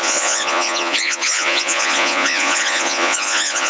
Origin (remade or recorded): remade